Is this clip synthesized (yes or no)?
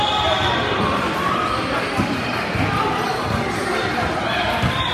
no